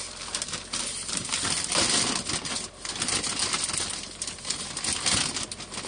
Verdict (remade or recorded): recorded